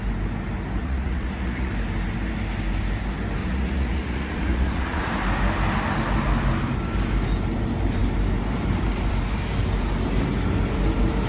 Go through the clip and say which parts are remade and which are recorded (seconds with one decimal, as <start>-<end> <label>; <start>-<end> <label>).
0.0-0.8 recorded; 0.8-1.7 remade; 1.7-3.4 recorded; 3.4-5.1 remade; 5.1-11.3 recorded